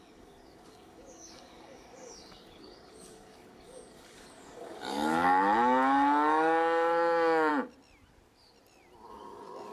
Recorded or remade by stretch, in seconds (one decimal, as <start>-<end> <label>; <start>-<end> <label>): 0.0-7.5 remade; 7.5-9.1 recorded; 9.1-9.7 remade